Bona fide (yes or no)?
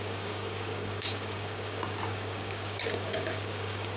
no